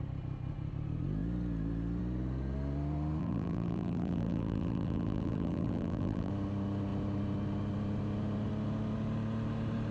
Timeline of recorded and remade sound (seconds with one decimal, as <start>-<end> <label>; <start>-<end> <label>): 0.0-3.2 recorded; 3.2-6.3 remade; 6.3-9.9 recorded